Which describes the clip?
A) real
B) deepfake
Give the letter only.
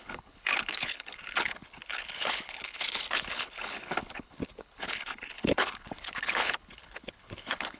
B